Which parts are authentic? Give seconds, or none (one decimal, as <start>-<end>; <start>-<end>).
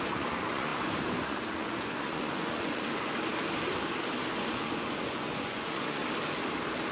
3.1-4.5; 6.0-6.9